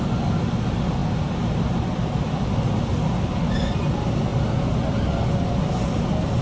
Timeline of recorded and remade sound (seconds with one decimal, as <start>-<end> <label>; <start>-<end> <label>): 0.0-4.3 recorded; 4.3-5.5 remade; 5.5-6.4 recorded